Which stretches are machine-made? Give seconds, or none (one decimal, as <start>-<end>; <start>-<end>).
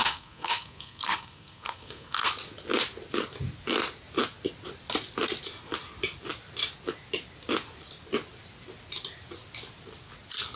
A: 0.0-2.3